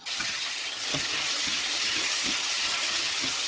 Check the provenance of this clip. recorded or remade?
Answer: remade